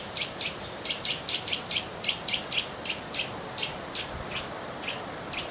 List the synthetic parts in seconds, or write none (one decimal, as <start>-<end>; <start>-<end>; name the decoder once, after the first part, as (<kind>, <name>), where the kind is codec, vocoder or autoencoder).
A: none